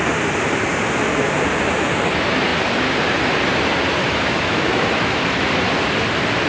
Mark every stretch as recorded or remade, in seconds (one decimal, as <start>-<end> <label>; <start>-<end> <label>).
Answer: 0.0-4.0 recorded; 4.0-5.3 remade; 5.3-6.5 recorded